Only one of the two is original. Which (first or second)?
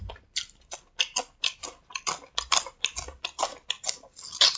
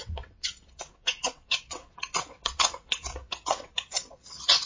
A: first